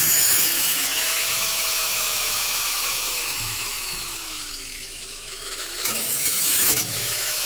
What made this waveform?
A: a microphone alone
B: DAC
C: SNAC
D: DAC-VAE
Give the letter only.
D